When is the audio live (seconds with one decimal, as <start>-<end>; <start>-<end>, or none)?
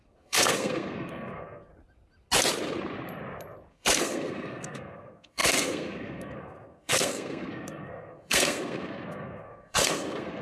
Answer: 1.7-3.7